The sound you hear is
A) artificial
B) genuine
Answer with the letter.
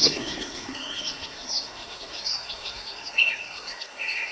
A